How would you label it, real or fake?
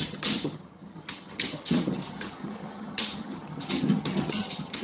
fake